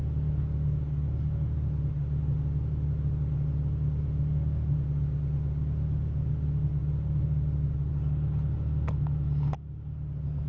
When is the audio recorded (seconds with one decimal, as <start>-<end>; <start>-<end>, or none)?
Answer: 0.0-10.5